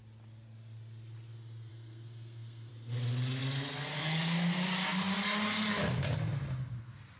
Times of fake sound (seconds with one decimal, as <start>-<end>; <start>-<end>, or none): 1.7-2.7